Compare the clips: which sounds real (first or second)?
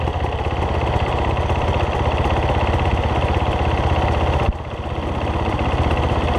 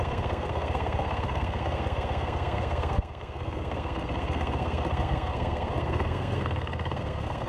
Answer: first